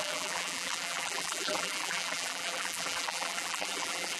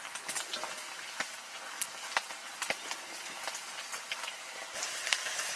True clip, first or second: second